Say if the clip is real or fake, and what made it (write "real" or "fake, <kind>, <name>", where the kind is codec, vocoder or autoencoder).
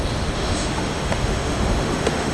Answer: fake, autoencoder, DAC-VAE